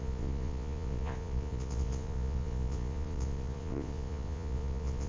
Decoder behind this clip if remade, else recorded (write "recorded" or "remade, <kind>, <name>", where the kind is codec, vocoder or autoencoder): remade, vocoder, Vocos